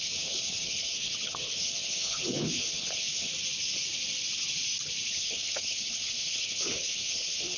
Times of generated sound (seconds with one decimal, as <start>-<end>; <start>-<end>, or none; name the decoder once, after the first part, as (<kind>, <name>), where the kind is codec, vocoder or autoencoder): 0.0-3.3 (codec, HILCodec); 5.1-7.6